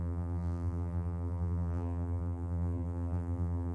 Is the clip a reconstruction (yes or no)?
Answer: yes